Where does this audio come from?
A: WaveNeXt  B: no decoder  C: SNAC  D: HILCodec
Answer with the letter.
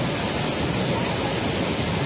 B